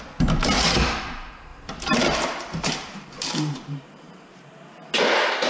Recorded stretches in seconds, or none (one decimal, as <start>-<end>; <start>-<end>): 0.0-1.5; 4.5-5.5